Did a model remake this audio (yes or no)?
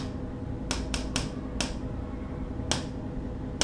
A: no